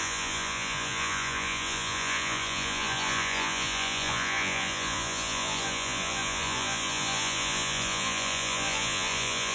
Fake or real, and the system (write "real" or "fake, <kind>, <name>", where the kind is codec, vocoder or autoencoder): fake, vocoder, Vocos